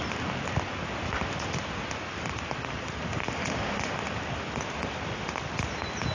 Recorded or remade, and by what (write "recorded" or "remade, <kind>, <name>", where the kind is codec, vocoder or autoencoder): recorded